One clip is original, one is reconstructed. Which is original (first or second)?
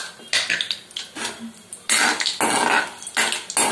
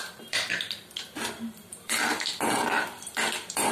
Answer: first